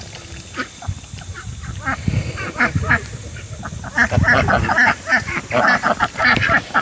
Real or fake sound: real